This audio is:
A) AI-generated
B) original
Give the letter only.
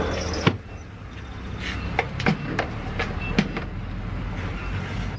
B